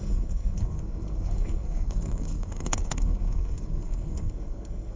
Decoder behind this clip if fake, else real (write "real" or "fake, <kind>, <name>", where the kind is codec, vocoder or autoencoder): fake, codec, SNAC